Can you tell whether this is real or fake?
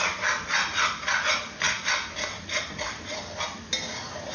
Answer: real